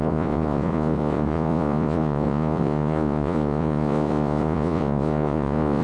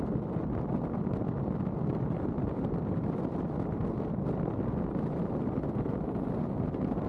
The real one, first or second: second